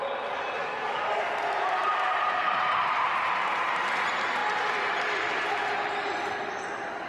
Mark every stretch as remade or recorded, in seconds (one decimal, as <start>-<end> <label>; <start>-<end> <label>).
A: 0.0-0.6 recorded; 0.6-1.2 remade; 1.2-7.1 recorded